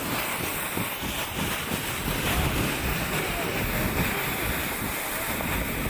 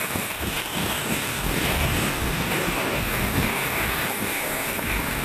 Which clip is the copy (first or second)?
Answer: second